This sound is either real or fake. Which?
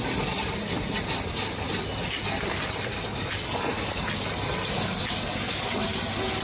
real